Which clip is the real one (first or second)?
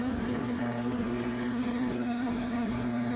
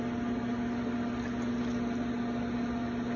second